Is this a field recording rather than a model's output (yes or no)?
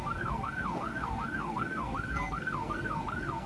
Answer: no